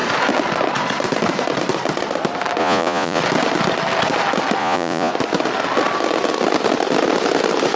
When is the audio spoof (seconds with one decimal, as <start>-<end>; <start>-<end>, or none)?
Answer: 2.6-3.2; 4.6-5.1